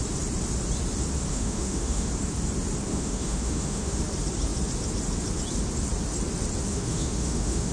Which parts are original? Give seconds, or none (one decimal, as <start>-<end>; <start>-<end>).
0.0-1.3; 2.1-2.9; 4.0-6.7